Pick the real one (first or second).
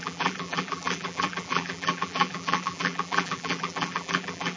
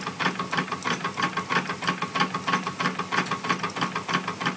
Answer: second